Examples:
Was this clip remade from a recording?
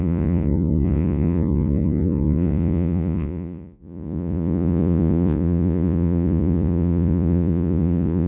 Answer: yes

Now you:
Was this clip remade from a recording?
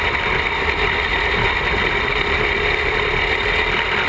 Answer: no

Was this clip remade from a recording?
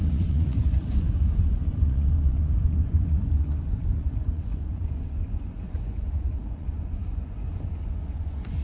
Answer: yes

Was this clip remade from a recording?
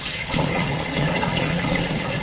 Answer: yes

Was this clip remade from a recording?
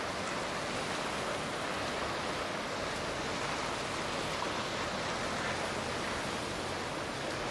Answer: no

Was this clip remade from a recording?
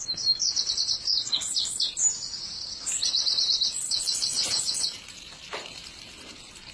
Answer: no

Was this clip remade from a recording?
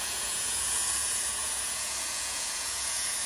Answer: yes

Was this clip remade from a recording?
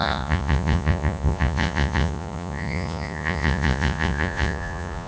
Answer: yes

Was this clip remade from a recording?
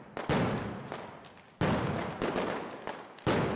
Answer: no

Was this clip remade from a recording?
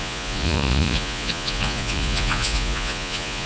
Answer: yes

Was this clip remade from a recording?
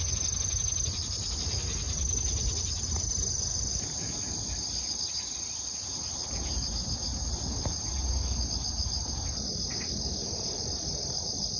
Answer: no